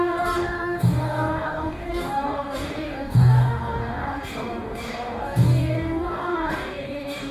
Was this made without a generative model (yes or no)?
no